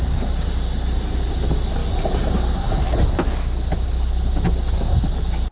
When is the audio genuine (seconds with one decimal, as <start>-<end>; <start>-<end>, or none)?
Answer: 0.0-5.5